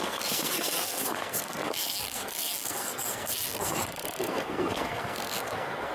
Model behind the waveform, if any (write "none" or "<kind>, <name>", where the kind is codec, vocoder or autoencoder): codec, SNAC